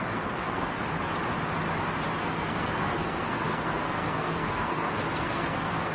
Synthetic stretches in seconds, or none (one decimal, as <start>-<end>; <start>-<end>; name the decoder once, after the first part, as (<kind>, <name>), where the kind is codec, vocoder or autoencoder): 0.0-0.8 (codec, SNAC); 2.2-5.9